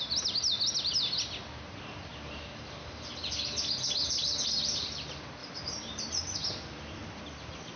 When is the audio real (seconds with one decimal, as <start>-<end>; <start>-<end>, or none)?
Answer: 0.0-5.4; 6.0-7.8